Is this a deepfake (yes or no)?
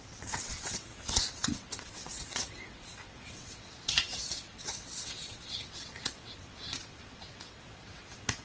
yes